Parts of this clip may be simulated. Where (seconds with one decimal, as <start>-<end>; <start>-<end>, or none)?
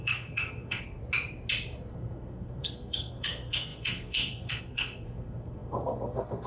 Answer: 0.0-1.0; 1.9-6.5